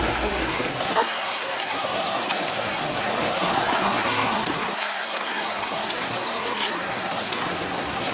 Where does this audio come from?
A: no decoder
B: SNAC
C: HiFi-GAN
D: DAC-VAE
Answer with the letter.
B